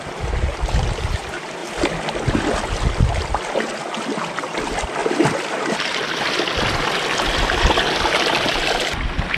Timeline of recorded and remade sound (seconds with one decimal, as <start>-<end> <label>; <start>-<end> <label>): 0.0-5.0 recorded; 5.0-5.6 remade; 5.6-9.4 recorded

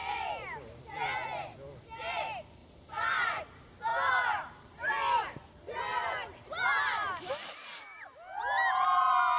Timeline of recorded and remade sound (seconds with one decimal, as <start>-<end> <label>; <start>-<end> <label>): 0.0-0.8 remade; 0.8-2.6 recorded; 2.6-3.4 remade; 3.4-9.4 recorded

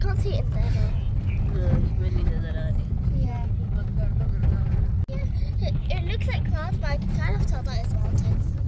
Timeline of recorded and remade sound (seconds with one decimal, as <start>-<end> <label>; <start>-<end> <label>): 0.0-8.7 recorded